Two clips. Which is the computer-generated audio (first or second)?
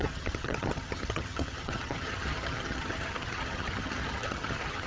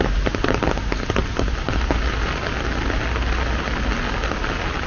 first